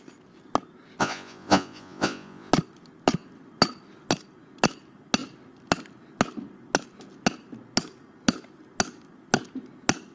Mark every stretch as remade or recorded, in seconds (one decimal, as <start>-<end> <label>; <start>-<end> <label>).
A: 0.0-1.0 recorded; 1.0-2.5 remade; 2.5-10.1 recorded